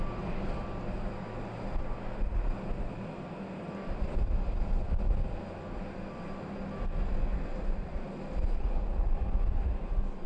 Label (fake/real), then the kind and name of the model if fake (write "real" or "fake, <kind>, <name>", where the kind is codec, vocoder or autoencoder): real